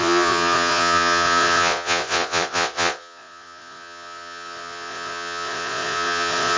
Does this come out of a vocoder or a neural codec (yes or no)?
yes